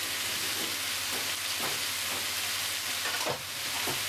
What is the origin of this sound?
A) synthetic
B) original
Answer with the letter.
B